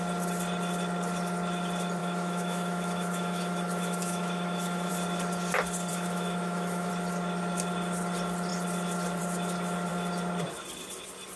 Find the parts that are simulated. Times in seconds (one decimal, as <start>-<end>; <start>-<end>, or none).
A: 2.0-4.9; 5.9-6.9